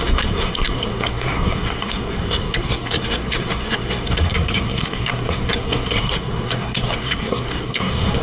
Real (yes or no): no